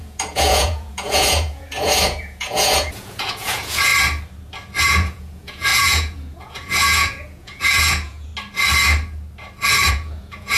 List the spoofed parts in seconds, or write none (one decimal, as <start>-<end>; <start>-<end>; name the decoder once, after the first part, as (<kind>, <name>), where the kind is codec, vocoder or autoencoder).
0.0-3.9 (vocoder, Vocos); 4.8-8.3; 9.9-10.6